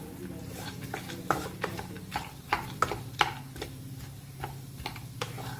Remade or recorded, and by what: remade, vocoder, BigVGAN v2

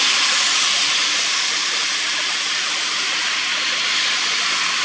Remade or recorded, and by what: recorded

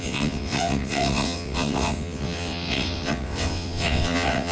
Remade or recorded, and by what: remade, vocoder, WaveNeXt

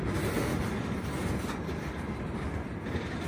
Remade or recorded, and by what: recorded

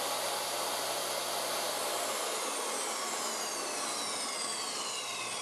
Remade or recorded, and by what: recorded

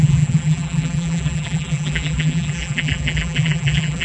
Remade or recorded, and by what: remade, vocoder, BigVGAN v2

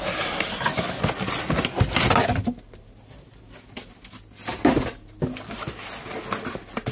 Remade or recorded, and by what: recorded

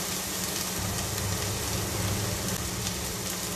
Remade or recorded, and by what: recorded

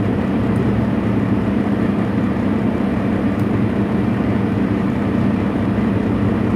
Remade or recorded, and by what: remade, vocoder, BigVGAN v2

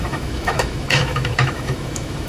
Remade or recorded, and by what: remade, autoencoder, DAC-VAE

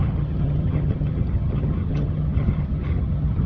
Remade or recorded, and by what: remade, vocoder, HiFi-GAN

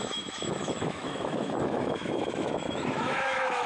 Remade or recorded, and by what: remade, autoencoder, DAC-VAE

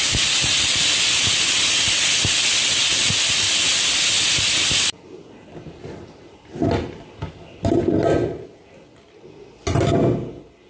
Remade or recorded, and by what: recorded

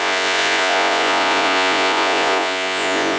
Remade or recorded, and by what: remade, vocoder, Vocos